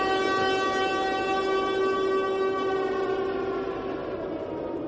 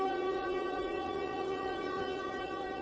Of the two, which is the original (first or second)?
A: first